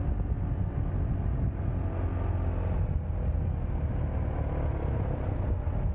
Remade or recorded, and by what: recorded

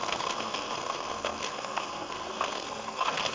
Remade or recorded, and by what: remade, codec, SNAC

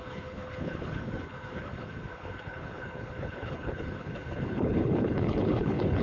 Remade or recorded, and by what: remade, codec, HILCodec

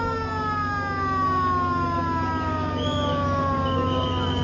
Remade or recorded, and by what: recorded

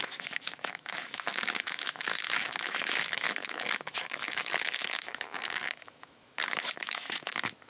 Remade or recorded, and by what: remade, autoencoder, DAC-VAE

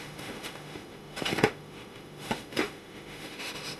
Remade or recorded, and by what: remade, autoencoder, DAC-VAE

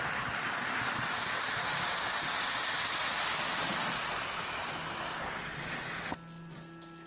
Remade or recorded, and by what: recorded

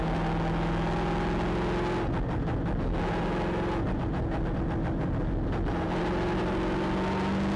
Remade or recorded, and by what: recorded